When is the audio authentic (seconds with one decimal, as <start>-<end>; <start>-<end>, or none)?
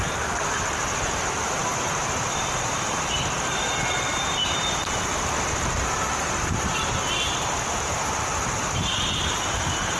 none